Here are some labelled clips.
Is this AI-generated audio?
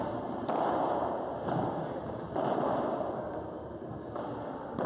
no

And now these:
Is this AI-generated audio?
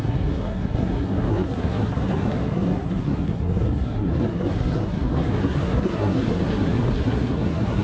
yes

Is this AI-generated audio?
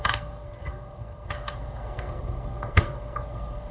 yes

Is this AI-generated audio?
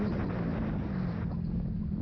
no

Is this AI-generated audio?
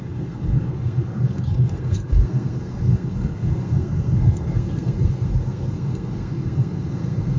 yes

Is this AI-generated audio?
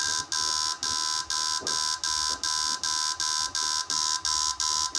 no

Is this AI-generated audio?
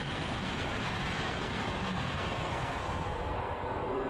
yes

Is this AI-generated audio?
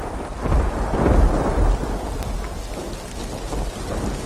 no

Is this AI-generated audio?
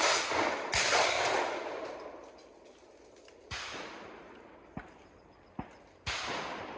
no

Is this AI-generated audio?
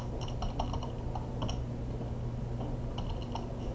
no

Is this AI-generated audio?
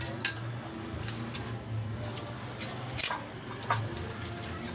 no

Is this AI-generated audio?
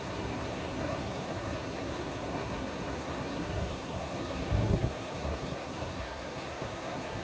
yes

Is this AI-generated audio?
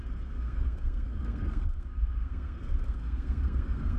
yes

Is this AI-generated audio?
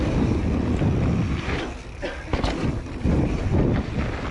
no